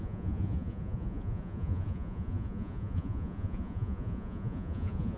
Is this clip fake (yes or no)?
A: yes